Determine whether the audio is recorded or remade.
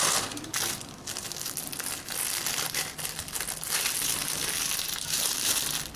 recorded